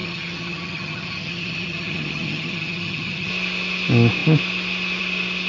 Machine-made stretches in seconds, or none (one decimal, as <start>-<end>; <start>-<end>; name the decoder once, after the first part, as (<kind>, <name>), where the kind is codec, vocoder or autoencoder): 0.0-3.3 (vocoder, HiFi-GAN)